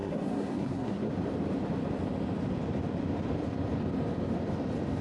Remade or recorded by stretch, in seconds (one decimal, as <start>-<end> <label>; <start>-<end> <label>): 0.0-1.1 remade; 1.1-5.0 recorded